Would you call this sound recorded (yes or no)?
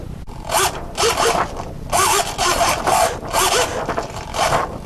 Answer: yes